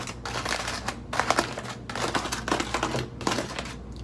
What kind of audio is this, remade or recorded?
recorded